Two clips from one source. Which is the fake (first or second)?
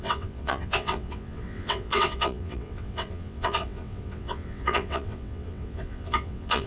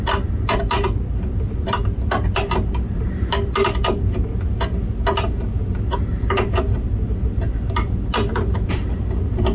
first